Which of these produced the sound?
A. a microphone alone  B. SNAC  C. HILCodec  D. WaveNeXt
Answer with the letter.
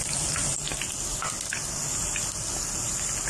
A